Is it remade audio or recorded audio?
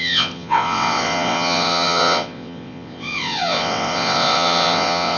remade